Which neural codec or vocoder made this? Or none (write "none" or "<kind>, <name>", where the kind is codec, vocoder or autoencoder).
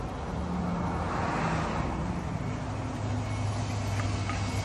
none